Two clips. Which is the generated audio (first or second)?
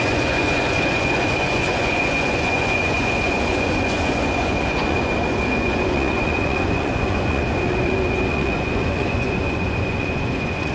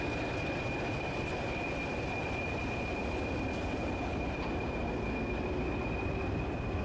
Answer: first